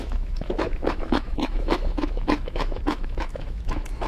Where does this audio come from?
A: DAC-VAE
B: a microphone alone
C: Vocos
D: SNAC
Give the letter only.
A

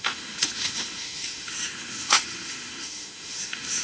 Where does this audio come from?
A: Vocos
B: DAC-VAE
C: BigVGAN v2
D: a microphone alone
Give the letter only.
B